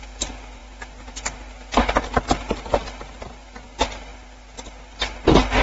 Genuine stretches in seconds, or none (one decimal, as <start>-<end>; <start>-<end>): 0.0-5.6